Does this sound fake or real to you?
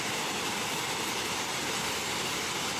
real